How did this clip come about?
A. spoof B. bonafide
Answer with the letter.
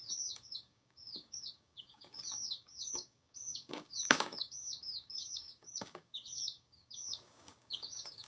A